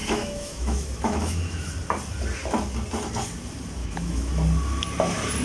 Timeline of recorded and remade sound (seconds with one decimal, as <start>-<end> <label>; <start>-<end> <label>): 0.0-1.7 remade; 1.7-3.8 recorded; 3.8-4.3 remade; 4.3-5.4 recorded